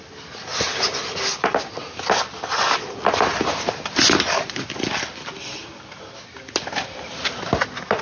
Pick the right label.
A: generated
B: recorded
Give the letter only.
B